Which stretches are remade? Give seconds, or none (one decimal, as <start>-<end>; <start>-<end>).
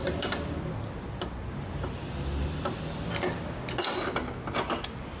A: 0.0-3.1